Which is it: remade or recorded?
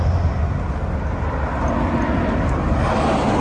recorded